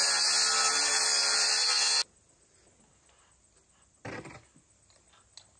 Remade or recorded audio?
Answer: recorded